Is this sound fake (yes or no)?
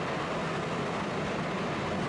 no